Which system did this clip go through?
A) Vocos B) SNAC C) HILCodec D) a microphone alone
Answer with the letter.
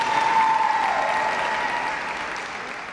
D